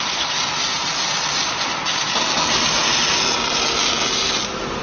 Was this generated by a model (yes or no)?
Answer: no